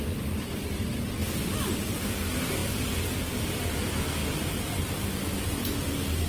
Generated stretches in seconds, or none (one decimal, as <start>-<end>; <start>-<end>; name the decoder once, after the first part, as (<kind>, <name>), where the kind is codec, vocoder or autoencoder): 1.2-2.1 (vocoder, BigVGAN v2); 2.6-3.7